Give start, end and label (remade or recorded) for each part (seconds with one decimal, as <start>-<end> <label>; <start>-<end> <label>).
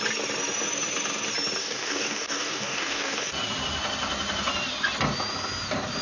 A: 0.0-1.6 recorded; 1.6-3.3 remade; 3.3-6.0 recorded